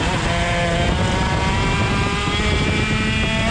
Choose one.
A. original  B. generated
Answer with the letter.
A